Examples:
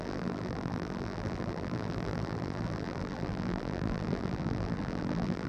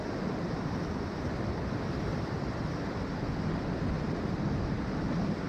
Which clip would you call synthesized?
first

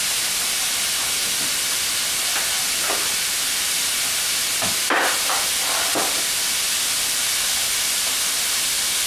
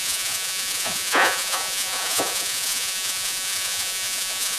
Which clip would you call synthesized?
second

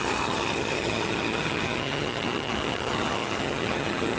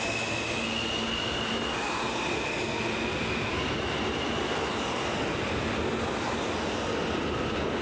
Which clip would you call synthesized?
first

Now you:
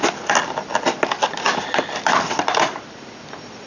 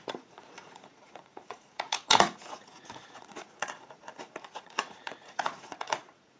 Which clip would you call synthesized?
second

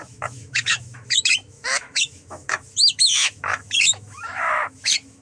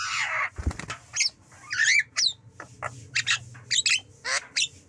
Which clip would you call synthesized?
first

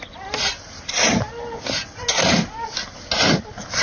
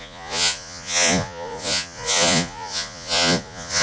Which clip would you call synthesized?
second